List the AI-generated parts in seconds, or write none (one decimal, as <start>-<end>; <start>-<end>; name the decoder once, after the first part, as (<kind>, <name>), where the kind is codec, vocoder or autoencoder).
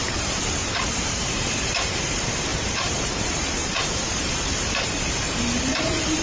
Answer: 0.0-6.2 (vocoder, BigVGAN v2)